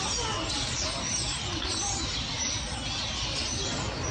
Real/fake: real